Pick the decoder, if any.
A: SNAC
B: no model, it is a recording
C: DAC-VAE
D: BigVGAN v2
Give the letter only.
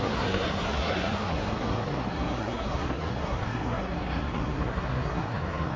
A